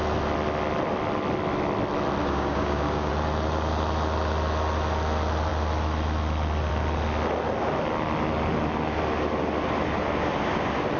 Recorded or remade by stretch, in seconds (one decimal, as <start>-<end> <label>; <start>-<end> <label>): 0.0-2.2 recorded; 2.2-3.1 remade; 3.1-11.0 recorded